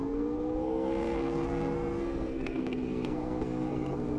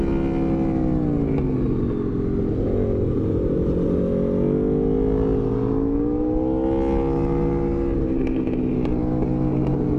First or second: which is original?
second